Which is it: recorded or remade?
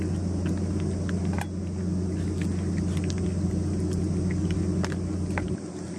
recorded